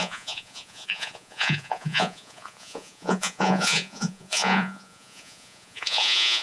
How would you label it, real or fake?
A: fake